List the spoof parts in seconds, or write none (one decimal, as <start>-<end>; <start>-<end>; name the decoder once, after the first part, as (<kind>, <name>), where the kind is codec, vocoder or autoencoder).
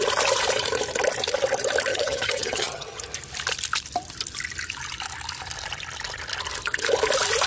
1.9-3.0 (vocoder, HiFi-GAN)